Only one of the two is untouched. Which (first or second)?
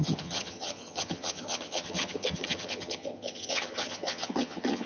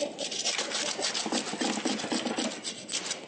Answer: second